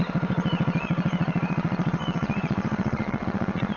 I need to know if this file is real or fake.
fake